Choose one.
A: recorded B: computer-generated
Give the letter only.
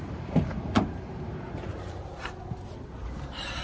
B